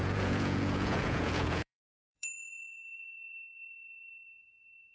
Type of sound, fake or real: fake